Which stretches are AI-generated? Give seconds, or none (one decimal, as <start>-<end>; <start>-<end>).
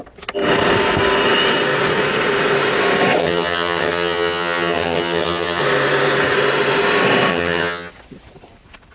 3.2-5.6; 7.3-7.9